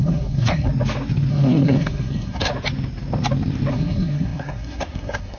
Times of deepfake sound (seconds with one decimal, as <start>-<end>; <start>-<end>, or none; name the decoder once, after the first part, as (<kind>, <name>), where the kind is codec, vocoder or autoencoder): 0.0-0.7 (codec, SNAC); 1.3-2.5; 3.7-5.4